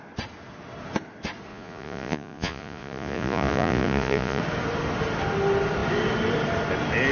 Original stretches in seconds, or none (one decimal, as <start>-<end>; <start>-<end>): 0.0-1.5; 4.4-7.1